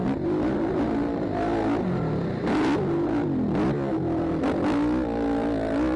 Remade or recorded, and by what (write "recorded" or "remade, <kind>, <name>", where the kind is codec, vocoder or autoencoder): recorded